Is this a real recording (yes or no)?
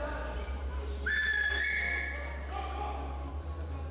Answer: yes